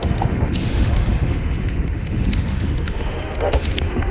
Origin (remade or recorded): remade